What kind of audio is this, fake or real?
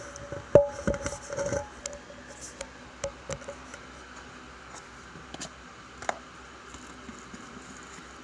real